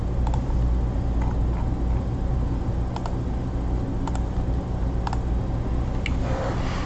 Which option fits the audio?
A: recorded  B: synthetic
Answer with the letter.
A